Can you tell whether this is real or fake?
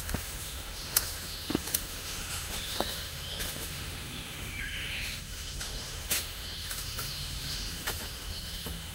fake